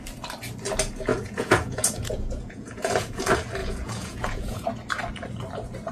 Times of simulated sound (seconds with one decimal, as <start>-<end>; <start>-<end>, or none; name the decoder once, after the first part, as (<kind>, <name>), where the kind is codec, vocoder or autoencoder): 1.1-3.2 (vocoder, Vocos); 3.6-4.7